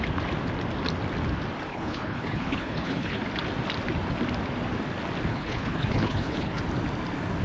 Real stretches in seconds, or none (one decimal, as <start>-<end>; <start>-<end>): 0.0-1.7; 3.2-5.3; 6.6-7.4